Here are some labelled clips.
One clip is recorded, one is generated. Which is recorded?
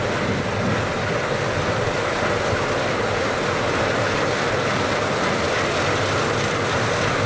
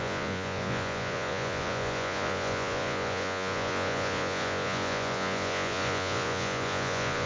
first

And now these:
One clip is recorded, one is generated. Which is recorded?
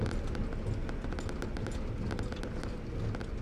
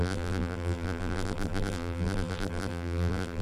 first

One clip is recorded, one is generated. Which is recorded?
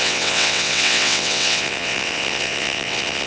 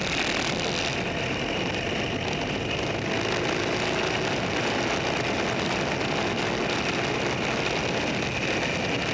second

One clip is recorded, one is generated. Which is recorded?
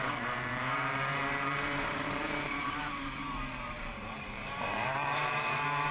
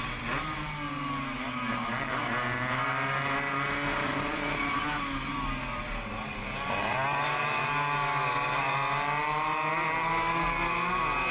second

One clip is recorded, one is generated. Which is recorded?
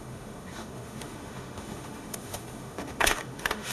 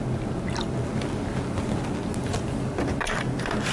second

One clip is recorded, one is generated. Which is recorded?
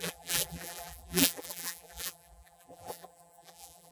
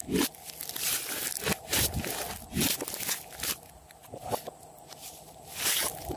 second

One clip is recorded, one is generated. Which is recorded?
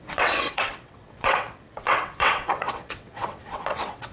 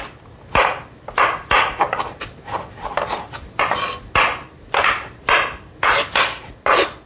second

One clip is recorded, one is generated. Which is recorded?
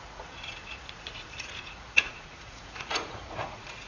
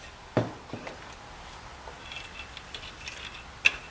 second